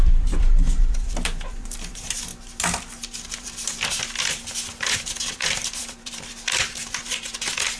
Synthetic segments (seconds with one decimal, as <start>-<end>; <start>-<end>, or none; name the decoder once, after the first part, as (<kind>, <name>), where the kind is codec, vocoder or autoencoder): 0.0-2.3 (vocoder, BigVGAN v2); 3.4-7.8